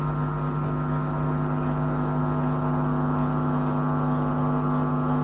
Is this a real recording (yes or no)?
yes